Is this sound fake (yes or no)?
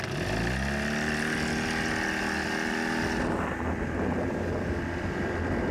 no